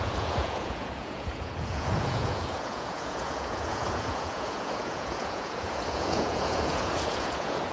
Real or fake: fake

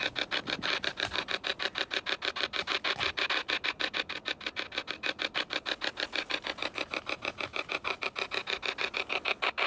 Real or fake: real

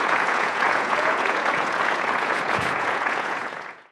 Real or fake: fake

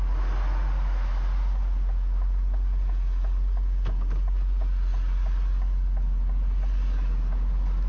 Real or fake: real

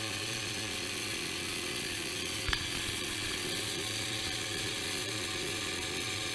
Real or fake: fake